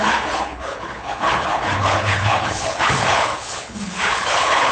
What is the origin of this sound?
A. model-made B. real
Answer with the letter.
A